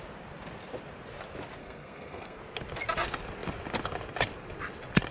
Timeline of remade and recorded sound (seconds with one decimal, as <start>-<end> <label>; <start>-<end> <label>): 0.0-1.6 recorded; 1.6-2.4 remade; 2.4-5.1 recorded